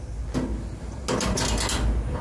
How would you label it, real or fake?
real